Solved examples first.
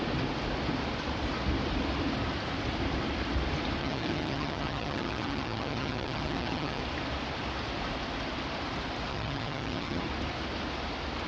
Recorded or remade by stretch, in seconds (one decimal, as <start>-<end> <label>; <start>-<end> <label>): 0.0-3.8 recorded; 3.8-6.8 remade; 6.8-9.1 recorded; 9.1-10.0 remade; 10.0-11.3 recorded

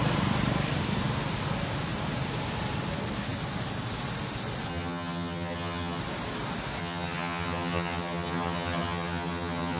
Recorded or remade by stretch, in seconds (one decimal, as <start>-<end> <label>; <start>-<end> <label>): 0.0-4.7 recorded; 4.7-6.0 remade; 6.0-6.8 recorded; 6.8-9.8 remade

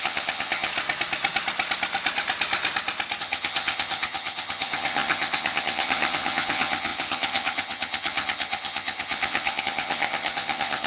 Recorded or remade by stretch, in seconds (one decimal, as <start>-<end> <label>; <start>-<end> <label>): 0.0-0.7 remade; 0.7-3.2 recorded; 3.2-10.9 remade